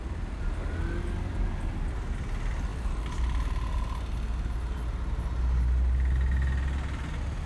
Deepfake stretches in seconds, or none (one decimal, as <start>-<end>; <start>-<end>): none